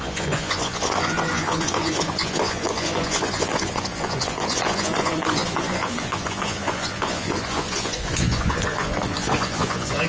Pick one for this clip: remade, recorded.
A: remade